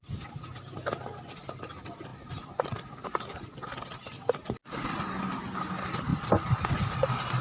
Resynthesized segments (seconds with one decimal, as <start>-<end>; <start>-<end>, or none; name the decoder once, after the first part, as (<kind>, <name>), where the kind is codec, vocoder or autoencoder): none